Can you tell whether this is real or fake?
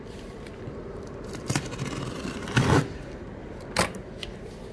fake